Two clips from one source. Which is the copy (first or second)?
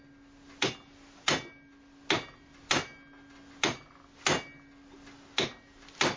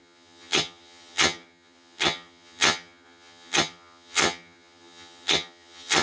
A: second